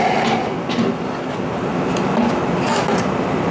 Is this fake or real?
real